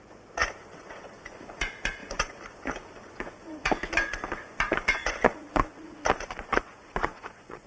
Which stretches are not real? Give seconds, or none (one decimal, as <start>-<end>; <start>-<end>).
0.0-7.7